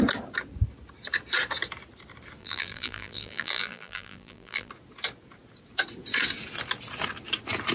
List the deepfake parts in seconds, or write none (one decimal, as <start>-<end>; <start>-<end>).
2.4-4.7